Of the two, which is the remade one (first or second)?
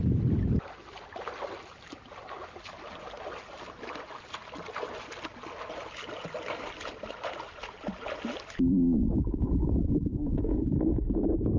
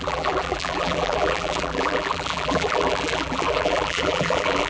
second